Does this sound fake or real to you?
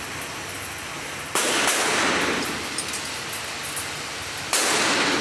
real